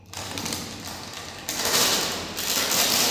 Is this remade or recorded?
recorded